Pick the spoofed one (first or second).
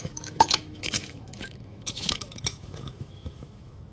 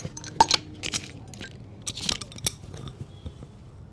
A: first